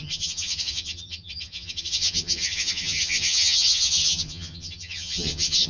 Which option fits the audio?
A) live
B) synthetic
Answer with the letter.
B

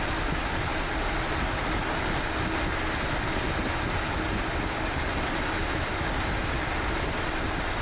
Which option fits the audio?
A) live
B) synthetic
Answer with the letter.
A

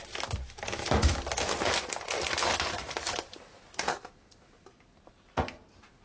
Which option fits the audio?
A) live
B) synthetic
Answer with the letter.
A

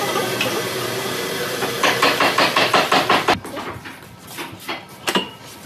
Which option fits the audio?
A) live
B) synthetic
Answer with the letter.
A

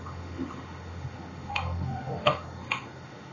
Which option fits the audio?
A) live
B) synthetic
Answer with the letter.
B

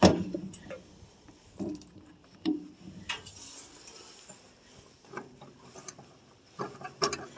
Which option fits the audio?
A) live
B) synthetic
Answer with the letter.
A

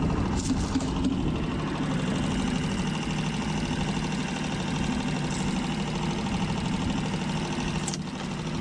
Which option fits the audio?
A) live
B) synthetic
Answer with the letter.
A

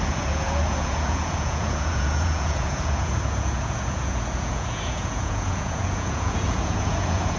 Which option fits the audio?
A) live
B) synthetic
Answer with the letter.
B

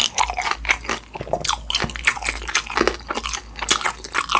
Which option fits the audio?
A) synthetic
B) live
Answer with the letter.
B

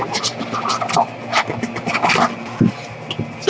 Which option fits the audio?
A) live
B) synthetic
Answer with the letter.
A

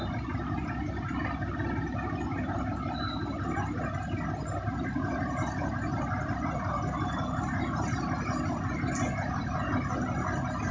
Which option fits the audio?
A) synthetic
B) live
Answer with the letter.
B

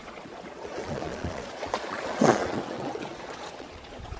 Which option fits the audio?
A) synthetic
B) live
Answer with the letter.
A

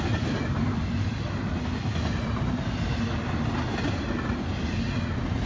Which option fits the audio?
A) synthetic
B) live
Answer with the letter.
B